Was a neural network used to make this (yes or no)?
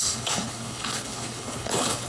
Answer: yes